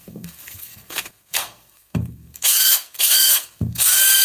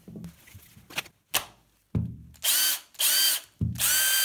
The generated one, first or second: first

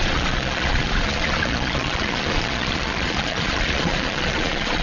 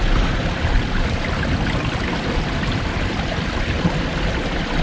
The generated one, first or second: first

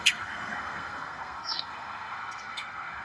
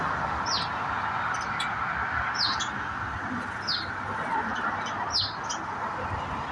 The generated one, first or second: first